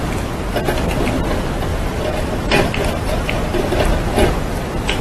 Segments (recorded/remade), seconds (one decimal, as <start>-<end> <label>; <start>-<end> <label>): 0.0-1.7 recorded; 1.7-3.8 remade; 3.8-5.0 recorded